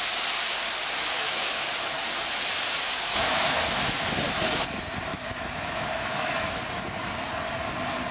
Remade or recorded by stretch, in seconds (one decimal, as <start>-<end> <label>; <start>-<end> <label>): 0.0-1.0 recorded; 1.0-3.6 remade; 3.6-5.1 recorded; 5.1-6.6 remade; 6.6-8.1 recorded